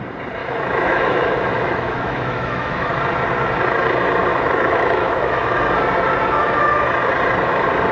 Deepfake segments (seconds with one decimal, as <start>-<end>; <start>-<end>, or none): 0.4-2.9; 4.3-5.6